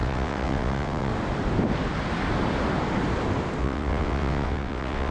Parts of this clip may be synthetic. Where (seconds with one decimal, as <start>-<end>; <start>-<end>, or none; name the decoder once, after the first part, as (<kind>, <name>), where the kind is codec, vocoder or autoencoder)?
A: 0.0-1.1 (vocoder, WaveNeXt); 3.6-5.1